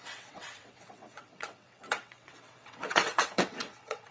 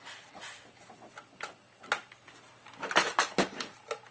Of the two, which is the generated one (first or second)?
first